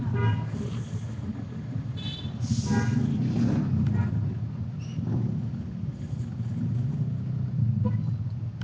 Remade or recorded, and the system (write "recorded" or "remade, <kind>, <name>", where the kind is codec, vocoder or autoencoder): recorded